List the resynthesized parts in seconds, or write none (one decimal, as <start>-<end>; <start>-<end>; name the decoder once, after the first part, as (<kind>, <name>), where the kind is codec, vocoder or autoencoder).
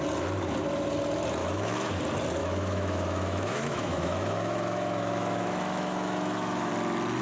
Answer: 1.4-1.9 (autoencoder, DAC-VAE); 2.4-6.7